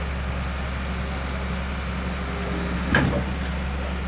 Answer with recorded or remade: recorded